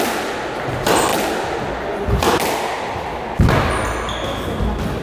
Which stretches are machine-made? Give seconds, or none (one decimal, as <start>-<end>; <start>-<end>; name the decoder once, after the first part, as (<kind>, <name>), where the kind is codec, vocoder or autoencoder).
none